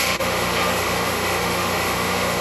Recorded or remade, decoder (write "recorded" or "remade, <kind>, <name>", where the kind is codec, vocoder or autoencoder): remade, autoencoder, DAC-VAE